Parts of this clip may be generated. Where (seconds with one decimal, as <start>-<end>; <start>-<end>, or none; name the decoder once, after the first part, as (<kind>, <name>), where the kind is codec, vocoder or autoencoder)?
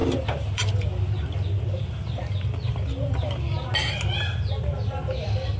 none